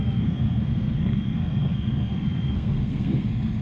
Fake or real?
fake